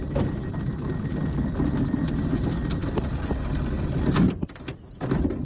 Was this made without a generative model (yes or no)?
yes